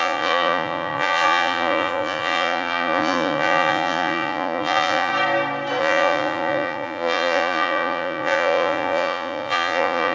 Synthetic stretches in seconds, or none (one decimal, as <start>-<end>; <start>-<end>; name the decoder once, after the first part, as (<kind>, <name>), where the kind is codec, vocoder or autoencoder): 0.0-5.1 (vocoder, Vocos); 5.8-10.1